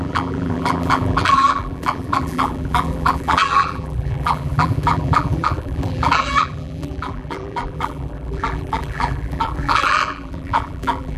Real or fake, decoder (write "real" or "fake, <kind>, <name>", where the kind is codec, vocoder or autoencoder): fake, vocoder, BigVGAN v2